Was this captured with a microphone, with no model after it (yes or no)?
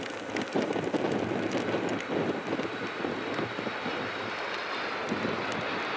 yes